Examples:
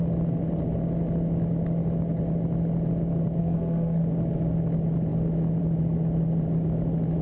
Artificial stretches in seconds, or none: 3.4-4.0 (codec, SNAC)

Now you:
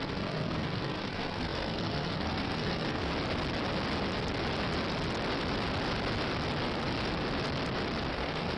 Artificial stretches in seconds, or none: 0.0-3.1 (codec, SNAC); 8.1-8.6

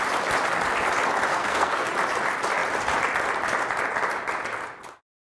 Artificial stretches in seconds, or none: 1.3-1.9 (codec, SNAC)

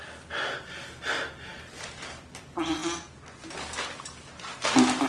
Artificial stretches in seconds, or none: none

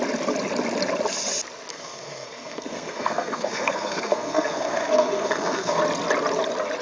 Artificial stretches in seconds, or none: 1.7-5.8 (codec, SNAC)

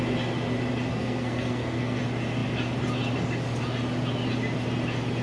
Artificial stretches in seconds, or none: 0.9-2.0 (codec, SNAC)

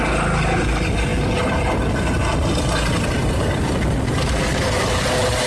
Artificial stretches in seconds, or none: none